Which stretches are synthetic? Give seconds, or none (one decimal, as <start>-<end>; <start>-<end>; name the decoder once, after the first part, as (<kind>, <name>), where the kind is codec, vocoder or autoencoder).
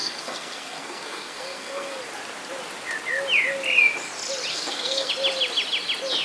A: 0.0-2.0 (codec, SNAC); 4.5-5.1